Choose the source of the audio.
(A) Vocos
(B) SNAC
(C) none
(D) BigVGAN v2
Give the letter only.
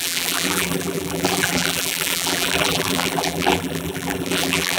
D